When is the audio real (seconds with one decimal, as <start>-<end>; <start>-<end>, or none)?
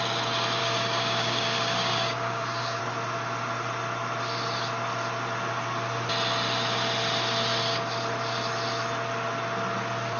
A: 0.0-0.6; 2.8-10.2